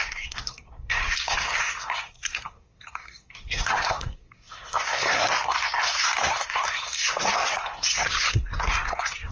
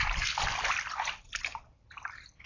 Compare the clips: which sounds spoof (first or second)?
first